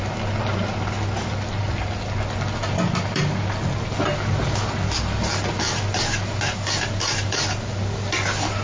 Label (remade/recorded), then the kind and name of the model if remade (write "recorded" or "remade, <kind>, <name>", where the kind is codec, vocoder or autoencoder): recorded